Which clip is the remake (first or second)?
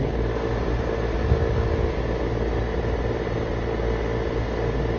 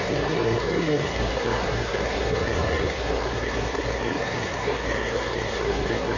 second